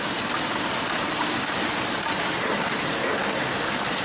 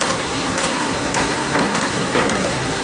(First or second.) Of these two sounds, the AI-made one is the second